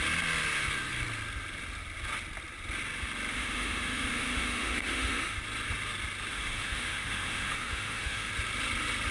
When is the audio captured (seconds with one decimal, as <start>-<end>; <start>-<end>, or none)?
0.0-3.3; 5.4-6.3; 8.3-9.1